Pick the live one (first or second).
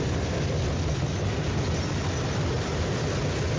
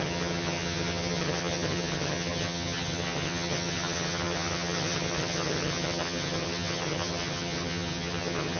first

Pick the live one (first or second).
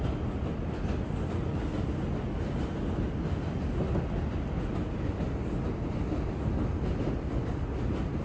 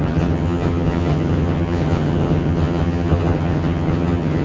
first